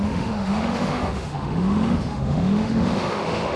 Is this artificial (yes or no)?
yes